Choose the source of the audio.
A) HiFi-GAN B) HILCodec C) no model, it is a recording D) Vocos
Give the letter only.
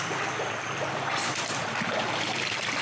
C